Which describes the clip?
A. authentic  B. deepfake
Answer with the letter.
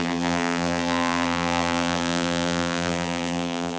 B